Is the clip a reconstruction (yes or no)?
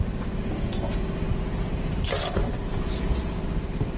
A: no